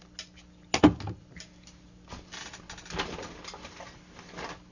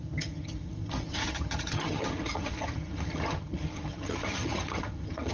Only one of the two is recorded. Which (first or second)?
first